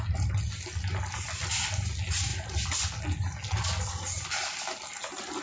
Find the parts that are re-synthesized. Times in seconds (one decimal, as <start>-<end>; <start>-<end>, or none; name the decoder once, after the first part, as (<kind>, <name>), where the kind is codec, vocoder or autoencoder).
none